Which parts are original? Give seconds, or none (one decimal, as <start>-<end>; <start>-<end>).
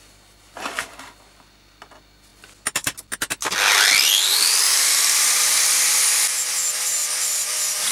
0.0-7.9